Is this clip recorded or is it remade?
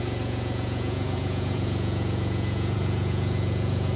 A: remade